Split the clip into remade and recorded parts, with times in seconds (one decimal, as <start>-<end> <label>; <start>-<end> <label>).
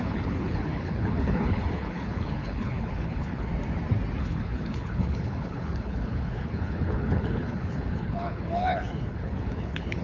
0.0-3.5 remade; 3.5-4.2 recorded; 4.2-10.0 remade